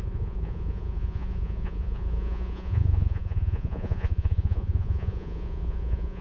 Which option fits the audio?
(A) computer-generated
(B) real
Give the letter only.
A